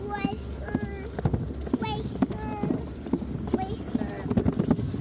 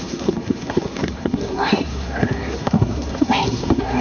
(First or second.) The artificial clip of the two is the second